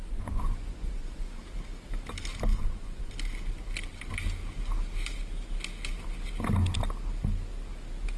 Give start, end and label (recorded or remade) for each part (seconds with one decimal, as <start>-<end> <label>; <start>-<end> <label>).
0.0-1.4 remade; 1.4-2.5 recorded; 2.5-3.1 remade; 3.1-8.2 recorded